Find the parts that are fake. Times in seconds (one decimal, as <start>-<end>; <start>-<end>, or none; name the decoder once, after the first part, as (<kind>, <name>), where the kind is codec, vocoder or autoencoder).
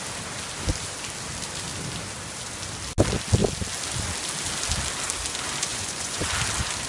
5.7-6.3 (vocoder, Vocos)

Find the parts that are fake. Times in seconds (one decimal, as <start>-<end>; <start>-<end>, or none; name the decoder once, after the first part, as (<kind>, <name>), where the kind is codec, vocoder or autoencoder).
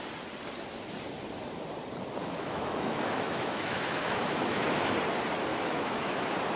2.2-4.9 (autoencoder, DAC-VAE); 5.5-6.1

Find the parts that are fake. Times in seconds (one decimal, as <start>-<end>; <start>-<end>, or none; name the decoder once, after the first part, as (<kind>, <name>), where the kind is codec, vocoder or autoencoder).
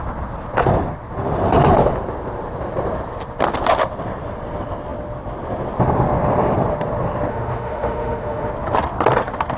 7.3-8.5 (autoencoder, DAC-VAE)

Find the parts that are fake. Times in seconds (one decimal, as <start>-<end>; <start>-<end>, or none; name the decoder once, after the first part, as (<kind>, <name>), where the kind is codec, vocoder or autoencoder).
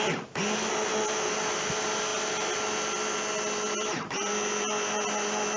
none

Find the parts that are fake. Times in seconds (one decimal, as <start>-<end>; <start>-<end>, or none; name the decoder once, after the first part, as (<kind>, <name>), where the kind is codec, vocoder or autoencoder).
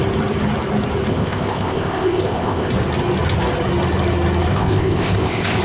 1.1-2.7 (codec, ZipCodec); 4.5-5.6